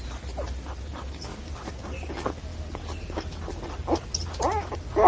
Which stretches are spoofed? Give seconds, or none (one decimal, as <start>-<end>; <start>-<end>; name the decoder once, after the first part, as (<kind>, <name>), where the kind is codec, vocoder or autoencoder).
none